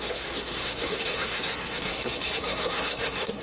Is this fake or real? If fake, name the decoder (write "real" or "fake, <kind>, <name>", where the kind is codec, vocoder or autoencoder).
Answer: fake, codec, SNAC